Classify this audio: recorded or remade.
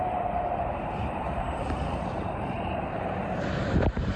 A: remade